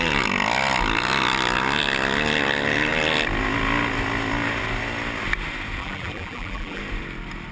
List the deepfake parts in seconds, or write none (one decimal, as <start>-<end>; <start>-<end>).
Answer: 5.8-6.8